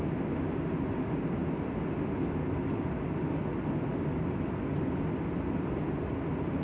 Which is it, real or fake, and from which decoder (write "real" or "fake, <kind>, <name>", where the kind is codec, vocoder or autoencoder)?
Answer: real